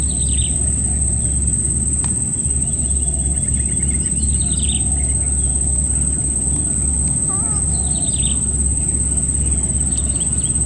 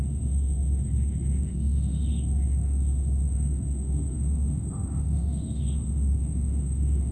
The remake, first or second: second